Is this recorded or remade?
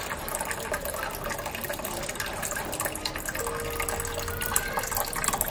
recorded